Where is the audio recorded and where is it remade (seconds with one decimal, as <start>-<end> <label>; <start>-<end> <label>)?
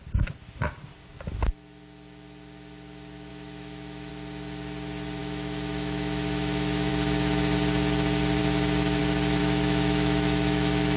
0.0-3.3 recorded; 3.3-4.1 remade; 4.1-5.2 recorded; 5.2-6.9 remade; 6.9-9.4 recorded; 9.4-11.0 remade